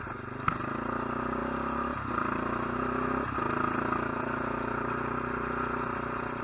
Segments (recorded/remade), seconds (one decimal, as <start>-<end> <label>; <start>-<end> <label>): 0.0-6.4 recorded